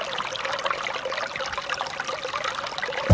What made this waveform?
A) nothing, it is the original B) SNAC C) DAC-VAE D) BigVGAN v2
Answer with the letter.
A